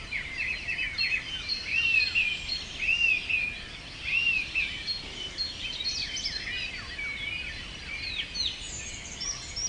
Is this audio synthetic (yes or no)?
no